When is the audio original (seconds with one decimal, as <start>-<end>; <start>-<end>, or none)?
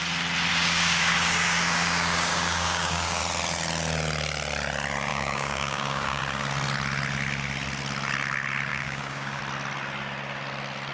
0.0-0.5; 3.2-5.1; 6.2-8.7; 9.4-10.9